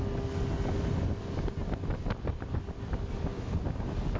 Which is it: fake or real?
real